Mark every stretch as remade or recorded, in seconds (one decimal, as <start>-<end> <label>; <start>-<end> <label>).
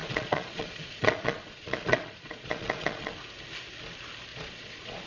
0.0-3.1 remade; 3.1-4.3 recorded; 4.3-5.1 remade